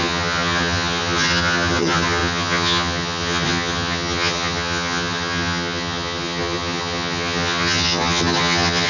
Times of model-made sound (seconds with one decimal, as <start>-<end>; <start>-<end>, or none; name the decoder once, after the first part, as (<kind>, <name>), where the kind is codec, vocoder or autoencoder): 0.0-8.9 (vocoder, HiFi-GAN)

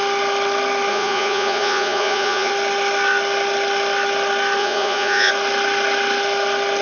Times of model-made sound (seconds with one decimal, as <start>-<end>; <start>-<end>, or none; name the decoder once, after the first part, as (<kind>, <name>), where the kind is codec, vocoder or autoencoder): 0.9-2.5 (vocoder, Vocos); 4.6-5.3

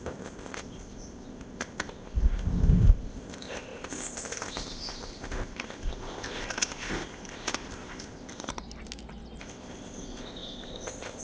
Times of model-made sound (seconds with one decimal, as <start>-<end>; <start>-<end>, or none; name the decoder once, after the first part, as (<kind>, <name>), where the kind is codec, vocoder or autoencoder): 0.0-8.5 (codec, ZipCodec); 9.4-11.2

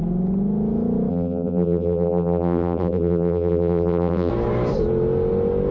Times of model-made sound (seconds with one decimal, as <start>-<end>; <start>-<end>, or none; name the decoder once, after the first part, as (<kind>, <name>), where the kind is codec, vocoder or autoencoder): 1.1-4.3 (vocoder, BigVGAN v2)

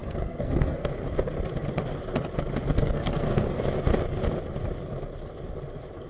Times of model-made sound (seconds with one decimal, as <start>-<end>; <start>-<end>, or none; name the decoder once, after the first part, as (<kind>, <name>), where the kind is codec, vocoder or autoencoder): 0.0-0.9 (codec, SNAC); 2.8-3.6

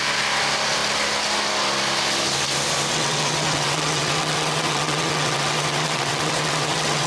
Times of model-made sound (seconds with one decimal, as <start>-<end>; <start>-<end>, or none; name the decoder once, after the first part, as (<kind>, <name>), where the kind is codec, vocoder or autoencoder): 2.9-7.1 (vocoder, WaveNeXt)